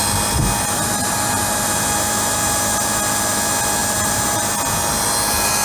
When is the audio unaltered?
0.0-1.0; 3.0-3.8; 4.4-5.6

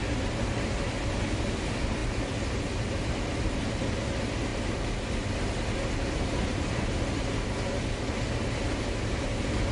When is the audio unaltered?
0.0-2.0; 3.7-4.5; 5.0-9.7